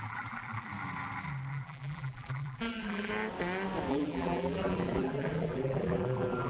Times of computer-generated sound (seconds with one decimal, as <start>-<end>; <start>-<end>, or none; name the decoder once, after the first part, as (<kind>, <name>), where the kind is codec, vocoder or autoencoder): 0.0-0.7 (vocoder, BigVGAN v2); 1.5-3.1; 3.9-6.5